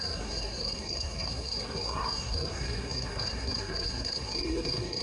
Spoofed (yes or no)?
yes